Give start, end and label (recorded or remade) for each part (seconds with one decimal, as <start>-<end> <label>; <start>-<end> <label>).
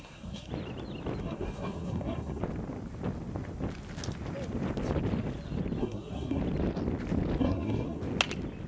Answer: 0.0-0.5 remade; 0.5-1.2 recorded; 1.2-2.4 remade; 2.4-5.8 recorded; 5.8-6.4 remade; 6.4-7.4 recorded; 7.4-8.0 remade; 8.0-8.7 recorded